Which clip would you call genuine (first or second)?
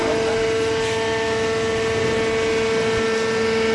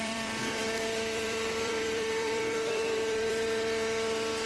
first